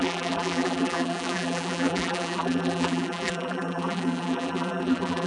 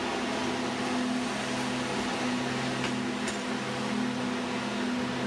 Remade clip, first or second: first